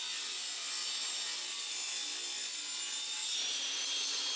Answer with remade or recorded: recorded